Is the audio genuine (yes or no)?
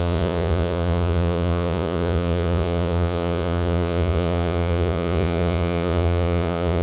no